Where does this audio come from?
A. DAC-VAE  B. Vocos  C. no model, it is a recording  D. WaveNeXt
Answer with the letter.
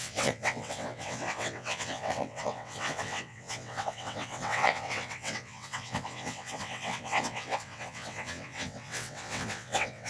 D